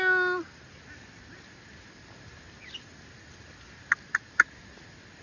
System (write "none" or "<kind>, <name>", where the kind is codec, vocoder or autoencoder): none